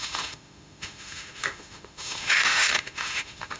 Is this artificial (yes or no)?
yes